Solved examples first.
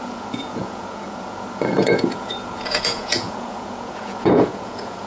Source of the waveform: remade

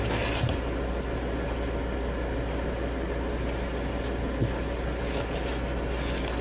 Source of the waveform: recorded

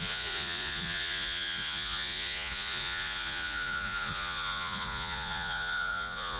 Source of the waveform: remade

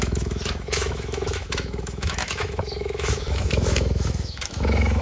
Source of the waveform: remade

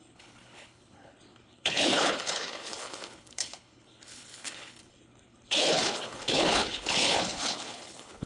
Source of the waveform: remade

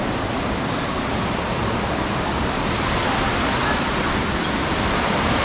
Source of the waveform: remade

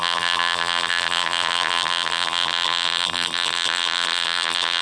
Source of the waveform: remade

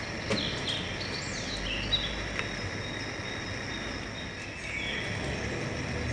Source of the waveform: recorded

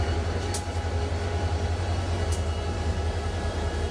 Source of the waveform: recorded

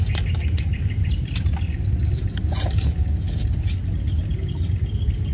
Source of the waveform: recorded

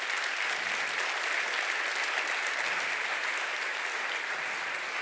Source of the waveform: recorded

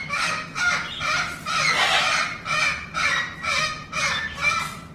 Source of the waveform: recorded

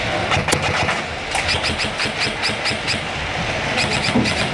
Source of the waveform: recorded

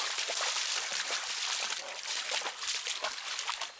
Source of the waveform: remade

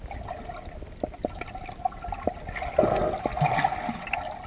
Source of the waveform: recorded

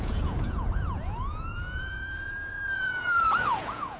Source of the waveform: remade